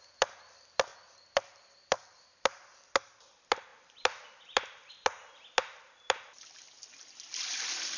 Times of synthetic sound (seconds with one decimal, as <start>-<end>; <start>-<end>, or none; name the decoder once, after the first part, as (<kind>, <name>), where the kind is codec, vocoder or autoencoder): none